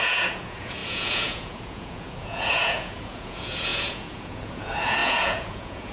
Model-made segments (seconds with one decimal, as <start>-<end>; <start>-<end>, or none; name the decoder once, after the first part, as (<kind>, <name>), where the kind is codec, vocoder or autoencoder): 0.0-5.9 (vocoder, Vocos)